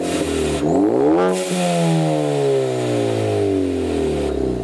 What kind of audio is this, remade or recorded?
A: recorded